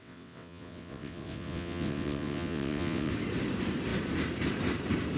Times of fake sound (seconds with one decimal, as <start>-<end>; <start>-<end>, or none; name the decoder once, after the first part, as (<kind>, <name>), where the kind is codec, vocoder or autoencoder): 0.0-3.1 (vocoder, WaveNeXt)